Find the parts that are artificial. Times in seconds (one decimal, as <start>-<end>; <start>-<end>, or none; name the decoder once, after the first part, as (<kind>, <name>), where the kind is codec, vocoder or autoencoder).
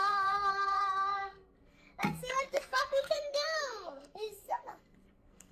0.0-5.5 (codec, SNAC)